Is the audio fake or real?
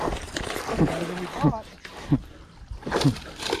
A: real